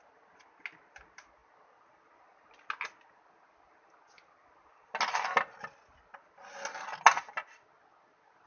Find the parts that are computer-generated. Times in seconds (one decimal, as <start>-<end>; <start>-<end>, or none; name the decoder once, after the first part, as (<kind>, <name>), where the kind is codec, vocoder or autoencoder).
none